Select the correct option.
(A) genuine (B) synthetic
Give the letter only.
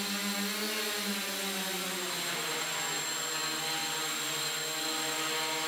A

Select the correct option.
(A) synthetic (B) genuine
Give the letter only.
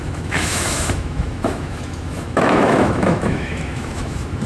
A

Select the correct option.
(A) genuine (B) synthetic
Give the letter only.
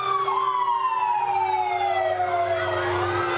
A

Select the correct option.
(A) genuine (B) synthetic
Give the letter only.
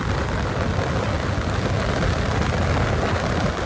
A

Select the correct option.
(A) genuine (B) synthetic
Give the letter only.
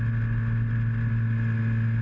A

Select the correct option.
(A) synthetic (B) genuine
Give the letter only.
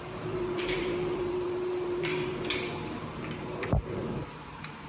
A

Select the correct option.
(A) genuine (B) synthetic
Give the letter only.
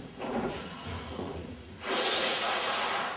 B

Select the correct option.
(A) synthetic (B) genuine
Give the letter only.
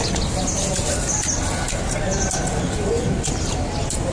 B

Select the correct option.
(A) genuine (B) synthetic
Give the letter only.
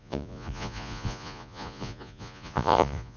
B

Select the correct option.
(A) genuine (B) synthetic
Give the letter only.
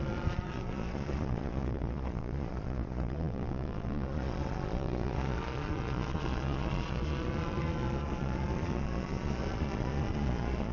B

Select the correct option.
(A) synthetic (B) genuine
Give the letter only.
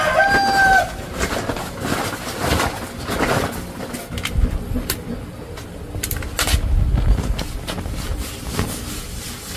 B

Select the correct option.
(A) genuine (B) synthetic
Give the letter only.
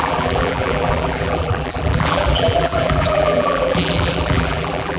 B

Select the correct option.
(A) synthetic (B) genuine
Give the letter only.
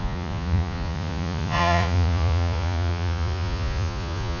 A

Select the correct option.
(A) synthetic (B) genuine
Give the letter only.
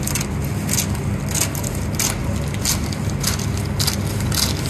B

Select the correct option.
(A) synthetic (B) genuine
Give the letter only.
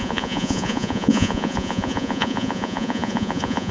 A